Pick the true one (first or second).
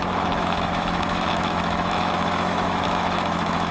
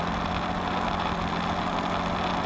second